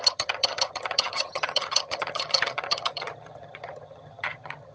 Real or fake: fake